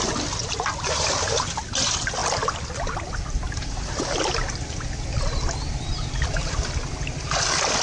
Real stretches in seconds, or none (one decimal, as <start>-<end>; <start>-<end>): 0.0-7.8